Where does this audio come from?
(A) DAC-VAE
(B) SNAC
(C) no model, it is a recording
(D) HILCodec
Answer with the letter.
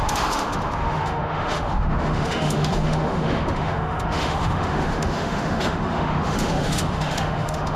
A